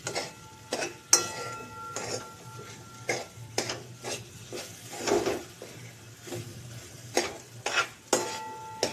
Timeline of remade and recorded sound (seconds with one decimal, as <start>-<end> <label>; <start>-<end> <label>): 0.0-2.0 recorded; 2.0-5.0 remade; 5.0-6.5 recorded; 6.5-7.2 remade; 7.2-8.9 recorded